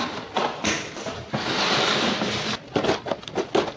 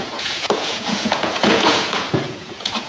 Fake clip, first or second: second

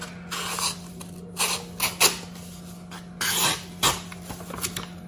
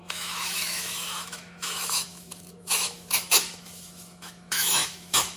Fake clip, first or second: second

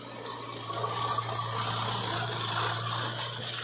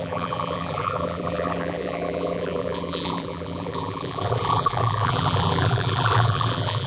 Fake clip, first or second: second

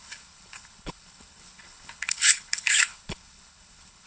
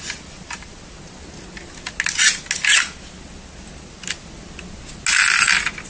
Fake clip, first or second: first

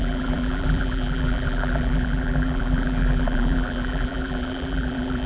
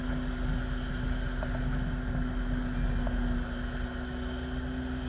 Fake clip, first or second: first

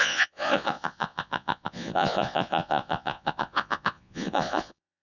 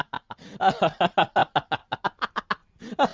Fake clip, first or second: first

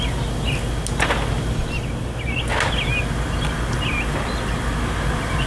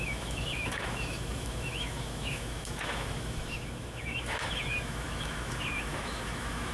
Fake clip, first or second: second